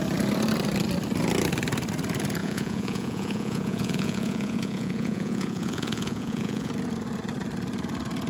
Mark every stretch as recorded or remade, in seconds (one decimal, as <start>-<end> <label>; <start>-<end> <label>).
0.0-2.4 recorded; 2.4-6.7 remade; 6.7-8.3 recorded

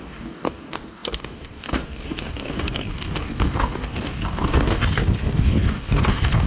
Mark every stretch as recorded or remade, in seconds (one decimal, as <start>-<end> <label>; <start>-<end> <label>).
0.0-6.5 remade

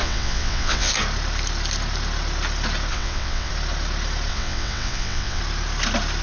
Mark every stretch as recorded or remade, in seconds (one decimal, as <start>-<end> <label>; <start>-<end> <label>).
0.0-0.9 remade; 0.9-2.9 recorded; 2.9-3.5 remade; 3.5-4.3 recorded; 4.3-5.4 remade; 5.4-6.2 recorded

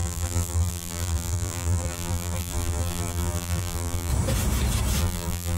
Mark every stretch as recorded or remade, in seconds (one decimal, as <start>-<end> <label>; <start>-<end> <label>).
0.0-4.1 remade; 4.1-5.0 recorded; 5.0-5.6 remade

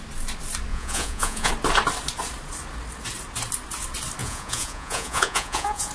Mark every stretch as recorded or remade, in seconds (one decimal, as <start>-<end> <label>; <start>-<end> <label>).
0.0-0.7 recorded; 0.7-1.5 remade; 1.5-4.2 recorded; 4.2-5.9 remade

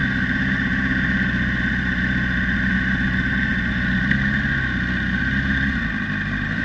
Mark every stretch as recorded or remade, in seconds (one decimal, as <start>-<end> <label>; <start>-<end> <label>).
0.0-6.6 recorded